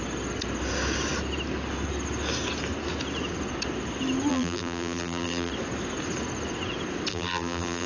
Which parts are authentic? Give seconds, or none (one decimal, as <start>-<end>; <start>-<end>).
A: 0.0-4.3; 5.5-7.1